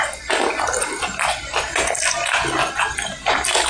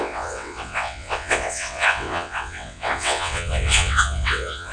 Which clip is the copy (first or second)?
second